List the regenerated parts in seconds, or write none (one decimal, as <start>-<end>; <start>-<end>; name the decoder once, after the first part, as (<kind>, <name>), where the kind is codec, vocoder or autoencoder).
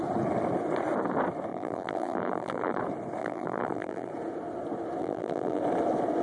1.5-2.8 (vocoder, BigVGAN v2); 3.2-4.1; 5.0-5.6